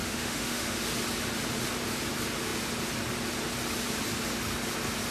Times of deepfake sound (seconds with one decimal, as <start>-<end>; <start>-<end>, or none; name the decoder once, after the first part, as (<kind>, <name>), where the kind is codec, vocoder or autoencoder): 0.0-0.8 (autoencoder, DAC-VAE)